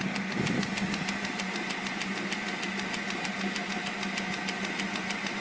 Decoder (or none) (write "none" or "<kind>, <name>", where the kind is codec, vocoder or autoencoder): none